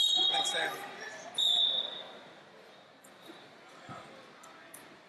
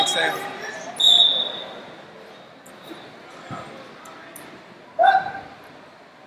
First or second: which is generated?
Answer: first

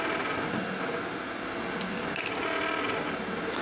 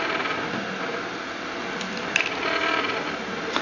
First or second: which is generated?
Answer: second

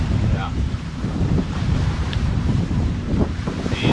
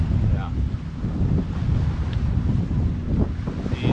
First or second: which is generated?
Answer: first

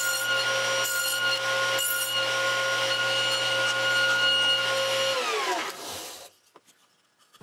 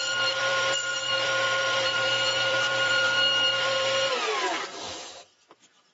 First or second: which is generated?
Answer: second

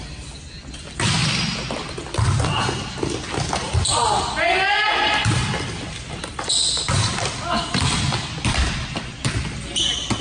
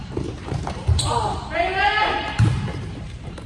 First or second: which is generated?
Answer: second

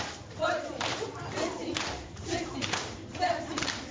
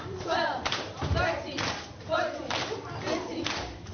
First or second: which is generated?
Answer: first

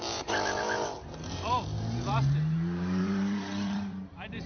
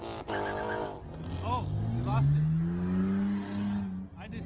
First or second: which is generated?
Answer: first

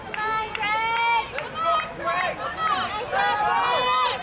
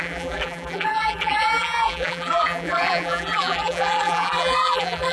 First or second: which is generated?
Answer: second